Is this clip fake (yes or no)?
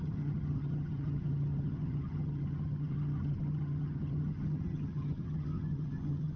yes